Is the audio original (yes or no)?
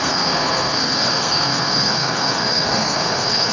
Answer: no